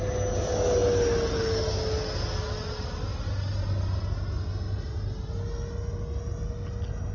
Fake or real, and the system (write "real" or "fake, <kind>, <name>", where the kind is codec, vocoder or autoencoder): real